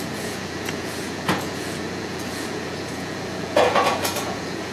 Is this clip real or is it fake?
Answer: fake